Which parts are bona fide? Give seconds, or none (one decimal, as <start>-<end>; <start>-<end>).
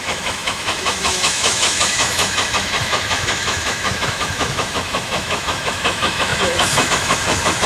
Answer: none